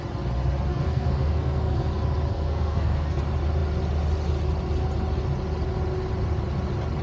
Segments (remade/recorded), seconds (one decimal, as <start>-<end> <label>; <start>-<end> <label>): 0.0-0.7 recorded; 0.7-1.9 remade; 1.9-2.3 recorded; 2.3-3.2 remade; 3.2-7.0 recorded